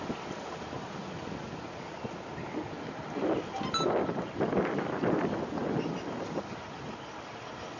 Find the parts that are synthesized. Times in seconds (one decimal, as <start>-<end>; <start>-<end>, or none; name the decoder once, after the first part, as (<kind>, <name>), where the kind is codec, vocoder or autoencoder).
none